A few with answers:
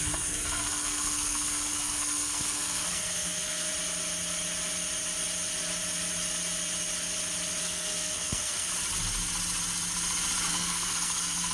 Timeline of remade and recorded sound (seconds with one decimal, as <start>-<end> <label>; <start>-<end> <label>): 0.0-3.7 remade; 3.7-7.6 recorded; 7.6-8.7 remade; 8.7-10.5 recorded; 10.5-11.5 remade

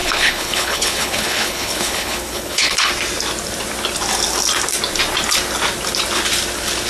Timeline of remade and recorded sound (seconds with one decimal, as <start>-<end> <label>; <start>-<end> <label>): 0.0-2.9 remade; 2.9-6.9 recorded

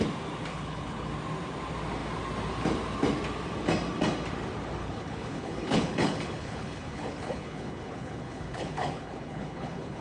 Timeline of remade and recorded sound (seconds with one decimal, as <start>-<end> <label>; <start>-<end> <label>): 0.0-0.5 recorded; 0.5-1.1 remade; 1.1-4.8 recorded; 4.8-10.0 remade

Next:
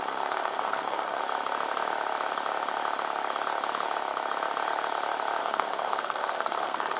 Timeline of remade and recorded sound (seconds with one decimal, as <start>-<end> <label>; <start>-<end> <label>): 0.0-1.2 remade; 1.2-5.4 recorded; 5.4-7.0 remade

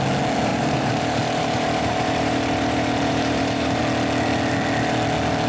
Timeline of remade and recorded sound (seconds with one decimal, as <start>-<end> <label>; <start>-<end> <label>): 0.0-0.5 recorded; 0.5-3.8 remade; 3.8-5.5 recorded

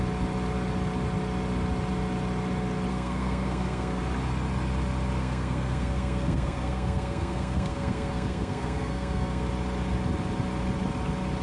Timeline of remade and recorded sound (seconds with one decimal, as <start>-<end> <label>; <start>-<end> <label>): 0.0-2.9 recorded; 2.9-4.0 remade; 4.0-5.2 recorded; 5.2-9.5 remade; 9.5-11.4 recorded

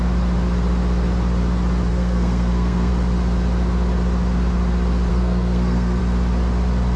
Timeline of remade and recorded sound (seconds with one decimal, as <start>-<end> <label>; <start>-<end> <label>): 0.0-1.9 recorded; 1.9-2.9 remade; 2.9-5.1 recorded; 5.1-6.0 remade; 6.0-7.0 recorded